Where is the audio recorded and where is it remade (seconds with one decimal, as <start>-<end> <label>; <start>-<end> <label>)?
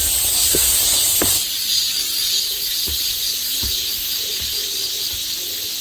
0.0-2.7 recorded; 2.7-4.6 remade; 4.6-5.8 recorded